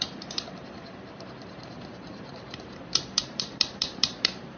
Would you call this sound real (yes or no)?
no